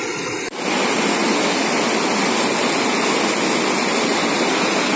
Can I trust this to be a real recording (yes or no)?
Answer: yes